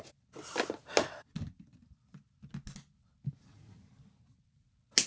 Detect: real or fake real